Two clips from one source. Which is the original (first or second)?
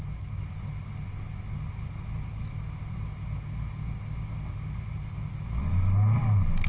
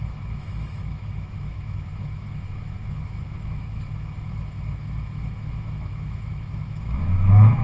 first